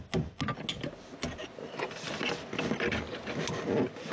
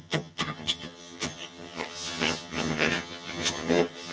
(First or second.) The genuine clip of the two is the first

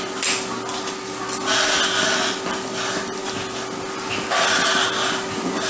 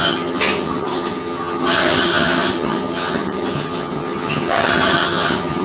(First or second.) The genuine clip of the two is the first